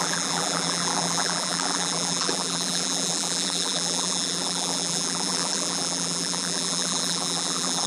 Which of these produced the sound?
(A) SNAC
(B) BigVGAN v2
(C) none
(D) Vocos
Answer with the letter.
B